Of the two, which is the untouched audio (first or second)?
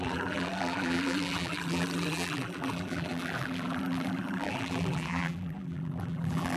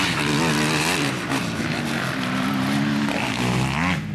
second